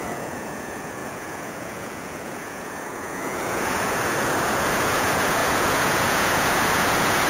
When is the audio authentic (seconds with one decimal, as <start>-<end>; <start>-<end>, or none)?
none